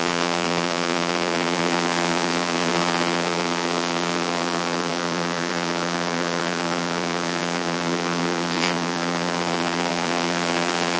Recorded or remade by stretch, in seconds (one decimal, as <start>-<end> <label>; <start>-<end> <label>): 0.0-11.0 remade